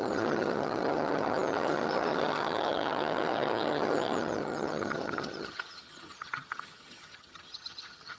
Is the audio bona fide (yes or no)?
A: no